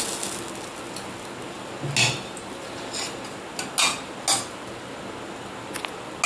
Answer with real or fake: real